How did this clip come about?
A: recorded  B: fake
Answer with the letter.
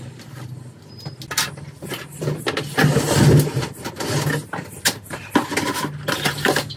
A